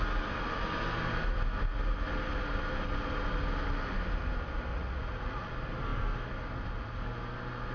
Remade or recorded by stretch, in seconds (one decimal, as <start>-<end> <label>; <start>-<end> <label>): 0.0-4.7 recorded; 4.7-5.5 remade; 5.5-7.7 recorded